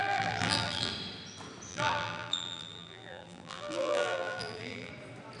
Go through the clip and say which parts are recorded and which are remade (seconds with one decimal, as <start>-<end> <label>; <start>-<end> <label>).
0.0-0.9 remade; 0.9-1.7 recorded; 1.7-4.9 remade; 4.9-5.4 recorded